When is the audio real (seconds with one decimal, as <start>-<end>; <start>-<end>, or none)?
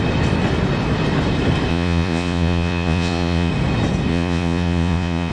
0.0-1.7; 3.5-4.1